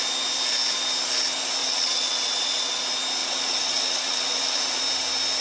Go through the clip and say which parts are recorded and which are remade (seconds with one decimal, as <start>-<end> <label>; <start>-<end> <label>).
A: 0.0-1.6 recorded; 1.6-2.8 remade; 2.8-3.2 recorded; 3.2-4.8 remade; 4.8-5.4 recorded